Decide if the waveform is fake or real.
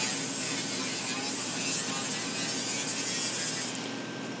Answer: real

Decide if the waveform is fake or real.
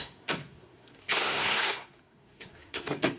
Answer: fake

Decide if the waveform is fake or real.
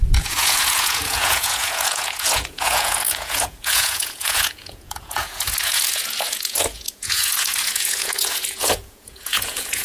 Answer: fake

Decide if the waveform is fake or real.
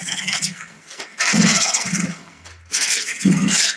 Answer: fake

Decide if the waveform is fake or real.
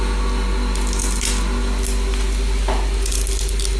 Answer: real